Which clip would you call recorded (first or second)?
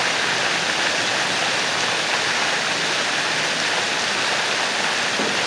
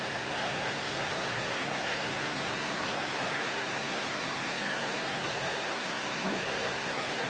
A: first